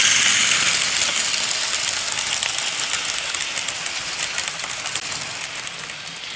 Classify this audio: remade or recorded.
recorded